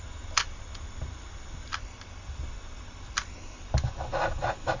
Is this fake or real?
real